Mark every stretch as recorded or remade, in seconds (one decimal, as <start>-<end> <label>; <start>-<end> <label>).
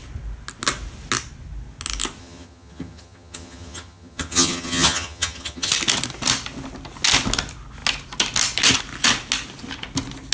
0.0-2.2 recorded; 2.2-5.7 remade; 5.7-10.3 recorded